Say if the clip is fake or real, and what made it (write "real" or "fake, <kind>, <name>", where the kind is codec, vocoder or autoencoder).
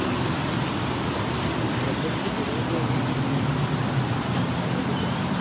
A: fake, vocoder, BigVGAN v2